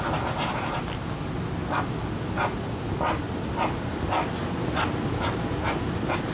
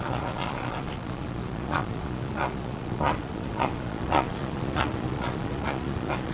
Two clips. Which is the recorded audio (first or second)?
first